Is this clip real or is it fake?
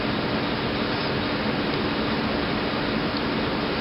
real